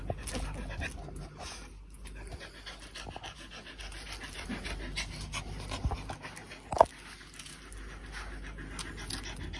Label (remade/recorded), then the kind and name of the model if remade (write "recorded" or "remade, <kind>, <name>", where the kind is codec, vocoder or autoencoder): recorded